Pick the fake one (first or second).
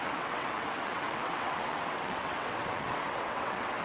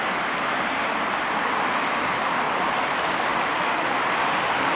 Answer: first